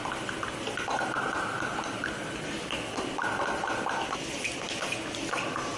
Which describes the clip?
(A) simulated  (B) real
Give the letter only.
B